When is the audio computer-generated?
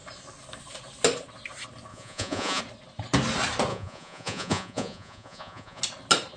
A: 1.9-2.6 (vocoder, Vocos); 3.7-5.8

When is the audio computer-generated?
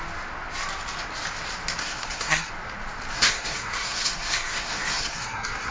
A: 1.8-2.5 (codec, SNAC); 3.1-5.7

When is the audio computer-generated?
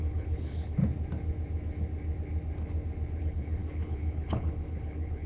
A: 0.0-0.8 (codec, HILCodec); 3.2-5.3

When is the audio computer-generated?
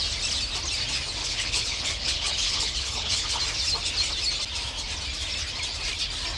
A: 1.2-3.4 (codec, HILCodec)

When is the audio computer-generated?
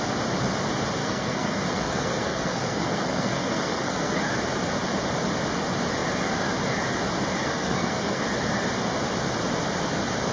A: 1.0-4.2 (codec, SNAC); 7.4-8.2